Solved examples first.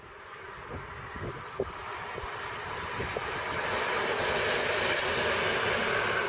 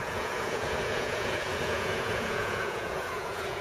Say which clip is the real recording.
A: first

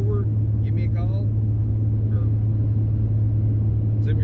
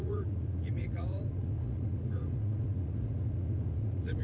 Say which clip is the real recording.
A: first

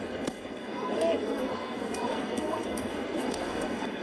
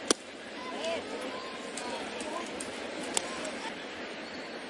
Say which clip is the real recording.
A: second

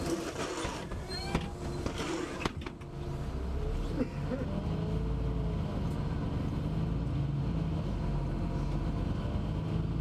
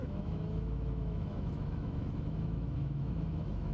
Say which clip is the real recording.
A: first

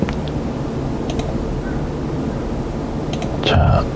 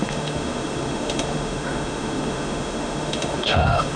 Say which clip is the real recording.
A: first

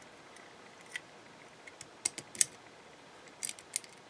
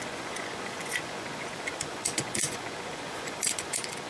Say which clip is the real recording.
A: first